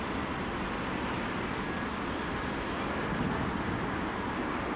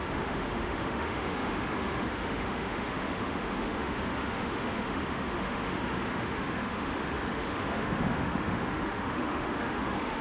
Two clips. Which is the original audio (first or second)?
first